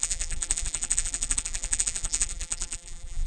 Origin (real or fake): fake